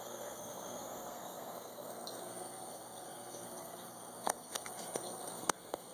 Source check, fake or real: fake